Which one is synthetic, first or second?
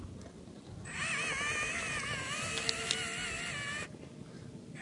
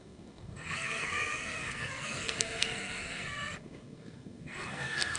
second